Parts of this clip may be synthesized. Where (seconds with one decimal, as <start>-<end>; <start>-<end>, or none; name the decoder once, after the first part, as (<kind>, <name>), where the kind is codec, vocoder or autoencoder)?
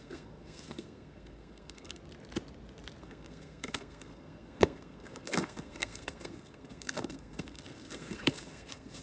0.0-2.0 (codec, SNAC); 3.0-9.0